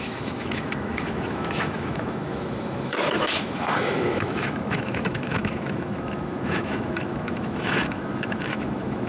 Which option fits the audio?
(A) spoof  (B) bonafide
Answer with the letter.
A